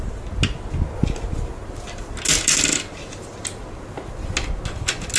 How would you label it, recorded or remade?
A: recorded